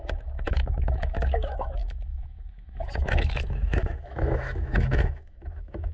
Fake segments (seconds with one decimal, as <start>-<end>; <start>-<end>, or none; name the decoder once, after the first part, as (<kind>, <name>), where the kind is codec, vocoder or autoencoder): 0.0-5.9 (autoencoder, DAC-VAE)